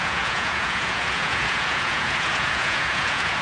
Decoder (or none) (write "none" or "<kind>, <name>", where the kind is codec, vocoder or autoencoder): vocoder, Vocos